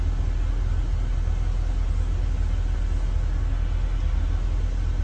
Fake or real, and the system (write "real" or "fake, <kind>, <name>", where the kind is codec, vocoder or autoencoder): real